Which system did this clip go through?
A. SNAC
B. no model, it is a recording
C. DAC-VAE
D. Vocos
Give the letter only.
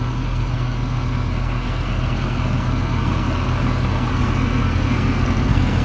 A